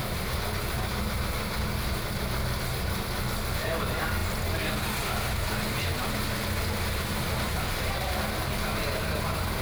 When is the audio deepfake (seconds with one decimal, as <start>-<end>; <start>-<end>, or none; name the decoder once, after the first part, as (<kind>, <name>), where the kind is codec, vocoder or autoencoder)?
none